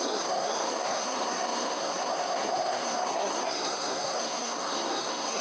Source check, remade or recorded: remade